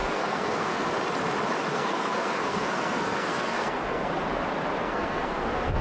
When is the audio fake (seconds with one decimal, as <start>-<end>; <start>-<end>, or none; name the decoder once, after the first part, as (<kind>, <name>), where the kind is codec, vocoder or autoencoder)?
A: 0.0-0.9 (codec, SNAC); 1.7-4.1; 4.8-5.8

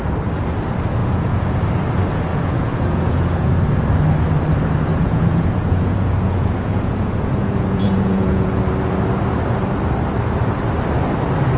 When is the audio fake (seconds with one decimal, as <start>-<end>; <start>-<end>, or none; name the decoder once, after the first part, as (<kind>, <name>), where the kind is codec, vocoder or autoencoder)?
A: 1.0-1.6 (vocoder, Vocos); 2.3-3.5; 4.9-8.6

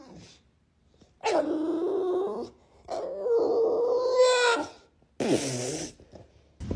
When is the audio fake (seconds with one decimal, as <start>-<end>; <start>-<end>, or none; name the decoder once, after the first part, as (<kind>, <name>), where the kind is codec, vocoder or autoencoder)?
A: none